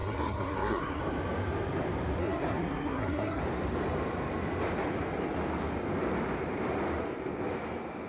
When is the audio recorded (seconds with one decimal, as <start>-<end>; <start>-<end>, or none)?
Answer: 1.0-2.2; 3.4-8.1

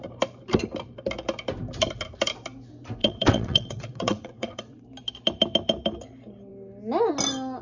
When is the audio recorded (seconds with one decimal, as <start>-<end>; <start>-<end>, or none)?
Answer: 0.0-3.0; 4.8-7.6

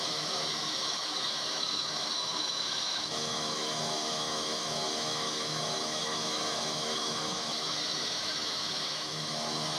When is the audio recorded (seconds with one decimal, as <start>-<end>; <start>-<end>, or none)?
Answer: none

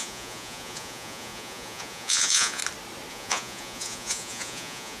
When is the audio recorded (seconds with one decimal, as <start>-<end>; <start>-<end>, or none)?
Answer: 2.6-3.1